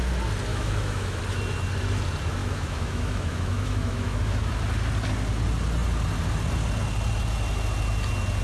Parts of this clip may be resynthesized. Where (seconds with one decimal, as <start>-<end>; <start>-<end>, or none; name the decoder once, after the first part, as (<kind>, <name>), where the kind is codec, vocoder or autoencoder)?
0.5-1.2 (autoencoder, DAC-VAE); 2.4-4.5